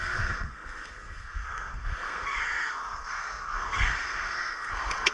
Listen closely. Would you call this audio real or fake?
fake